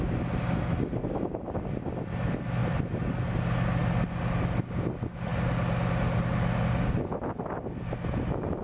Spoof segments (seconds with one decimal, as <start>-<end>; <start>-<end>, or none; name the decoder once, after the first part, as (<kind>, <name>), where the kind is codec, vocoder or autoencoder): 2.6-3.4 (vocoder, BigVGAN v2)